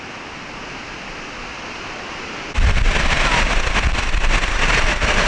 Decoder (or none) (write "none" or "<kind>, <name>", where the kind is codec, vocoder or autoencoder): none